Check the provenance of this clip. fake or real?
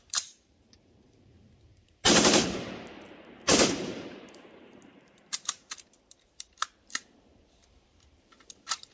fake